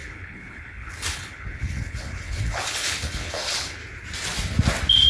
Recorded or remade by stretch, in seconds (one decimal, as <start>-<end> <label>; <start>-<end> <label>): 0.0-3.8 remade; 3.8-5.1 recorded